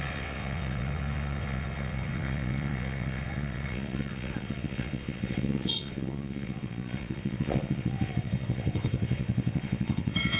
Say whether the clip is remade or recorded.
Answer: remade